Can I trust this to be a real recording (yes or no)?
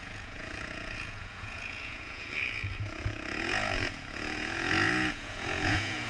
no